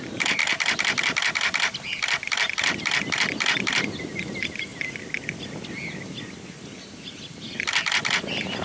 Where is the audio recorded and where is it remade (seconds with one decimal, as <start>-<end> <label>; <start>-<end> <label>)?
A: 0.0-0.4 recorded; 0.4-4.0 remade; 4.0-4.7 recorded; 4.7-5.3 remade; 5.3-8.6 recorded